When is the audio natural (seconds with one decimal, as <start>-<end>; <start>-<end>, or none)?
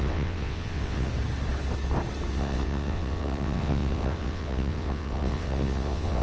1.1-2.3